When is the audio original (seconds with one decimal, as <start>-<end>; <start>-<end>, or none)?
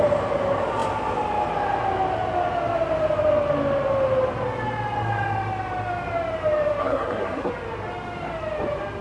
0.0-6.8; 7.5-9.0